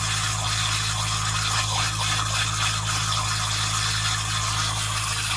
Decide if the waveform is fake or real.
real